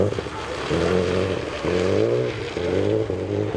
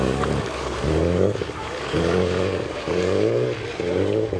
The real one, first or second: first